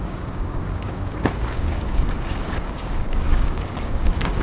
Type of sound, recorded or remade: remade